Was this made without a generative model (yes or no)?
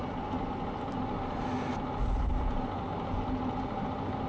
yes